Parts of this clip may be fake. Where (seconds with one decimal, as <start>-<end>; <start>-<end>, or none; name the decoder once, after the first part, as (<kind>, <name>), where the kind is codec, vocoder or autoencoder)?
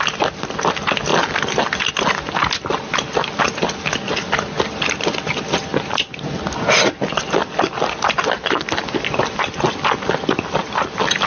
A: none